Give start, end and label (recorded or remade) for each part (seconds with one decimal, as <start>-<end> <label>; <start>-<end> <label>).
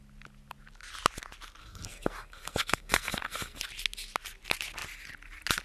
0.0-1.6 recorded; 1.6-3.6 remade; 3.6-5.6 recorded